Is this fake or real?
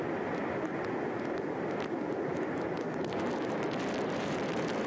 real